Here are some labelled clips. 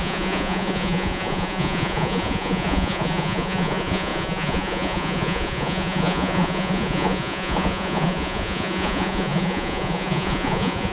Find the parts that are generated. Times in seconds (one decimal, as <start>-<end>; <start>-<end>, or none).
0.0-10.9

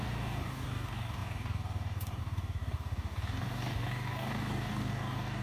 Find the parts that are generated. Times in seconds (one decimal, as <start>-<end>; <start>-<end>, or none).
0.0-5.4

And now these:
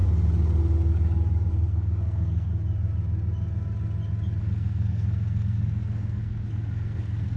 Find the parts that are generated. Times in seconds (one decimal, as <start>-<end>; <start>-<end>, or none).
1.5-2.5; 4.4-7.4